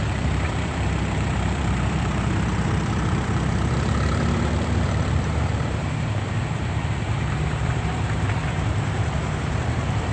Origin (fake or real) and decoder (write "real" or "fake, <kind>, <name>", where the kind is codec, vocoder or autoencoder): fake, vocoder, BigVGAN v2